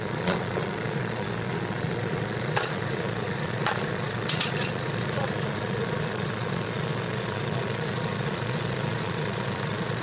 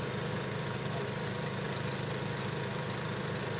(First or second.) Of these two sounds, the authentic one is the second